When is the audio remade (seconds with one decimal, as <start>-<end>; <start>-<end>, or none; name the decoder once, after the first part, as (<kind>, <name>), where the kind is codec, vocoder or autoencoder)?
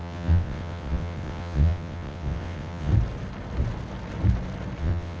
0.0-2.9 (vocoder, WaveNeXt); 4.8-5.2